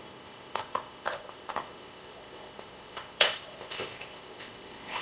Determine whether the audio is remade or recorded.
remade